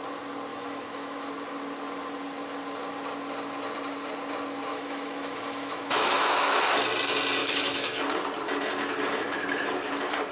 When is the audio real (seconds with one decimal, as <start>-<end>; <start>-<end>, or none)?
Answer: 0.0-0.5; 1.3-4.7; 6.6-7.4; 8.0-10.3